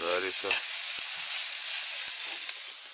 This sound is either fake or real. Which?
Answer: real